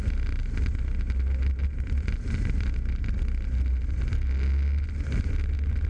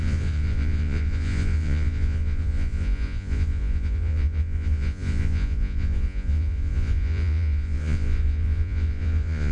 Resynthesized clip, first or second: second